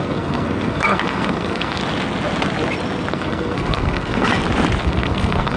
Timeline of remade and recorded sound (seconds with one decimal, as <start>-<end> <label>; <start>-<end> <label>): 0.0-1.8 remade; 1.8-3.1 recorded; 3.1-4.3 remade; 4.3-4.8 recorded; 4.8-5.6 remade